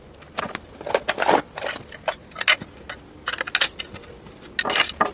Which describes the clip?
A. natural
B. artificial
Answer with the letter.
A